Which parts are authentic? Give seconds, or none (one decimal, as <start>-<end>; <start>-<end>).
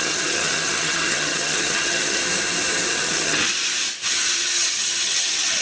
2.2-2.9; 3.4-4.0